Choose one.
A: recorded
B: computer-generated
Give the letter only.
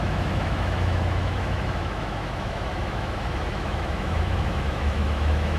B